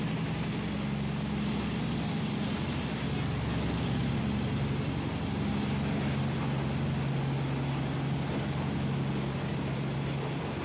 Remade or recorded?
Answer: recorded